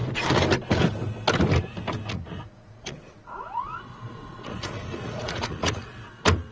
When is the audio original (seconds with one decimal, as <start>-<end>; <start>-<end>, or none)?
0.0-2.1; 6.0-6.5